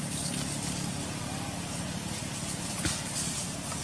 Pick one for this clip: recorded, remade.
recorded